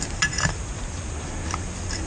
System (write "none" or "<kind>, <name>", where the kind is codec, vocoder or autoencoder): none